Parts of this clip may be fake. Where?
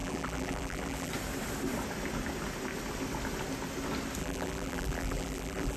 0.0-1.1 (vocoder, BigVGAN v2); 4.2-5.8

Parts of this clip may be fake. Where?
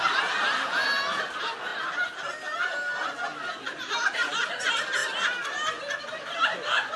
none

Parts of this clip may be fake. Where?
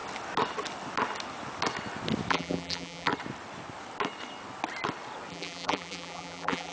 2.3-3.1 (vocoder, BigVGAN v2); 5.3-6.7